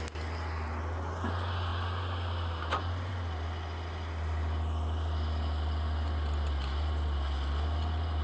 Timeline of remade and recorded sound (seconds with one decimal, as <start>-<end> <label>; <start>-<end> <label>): 0.0-8.2 recorded